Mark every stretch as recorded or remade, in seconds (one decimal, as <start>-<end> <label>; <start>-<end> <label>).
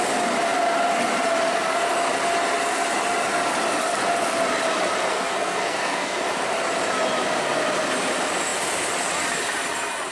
0.0-5.1 recorded; 5.1-6.2 remade; 6.2-10.1 recorded